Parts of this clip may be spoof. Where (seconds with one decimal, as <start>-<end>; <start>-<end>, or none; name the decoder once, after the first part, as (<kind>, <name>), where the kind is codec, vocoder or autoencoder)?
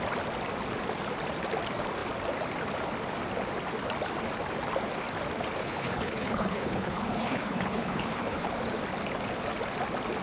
5.6-8.5 (codec, HILCodec)